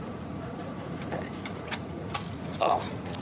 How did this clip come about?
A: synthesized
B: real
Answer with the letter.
A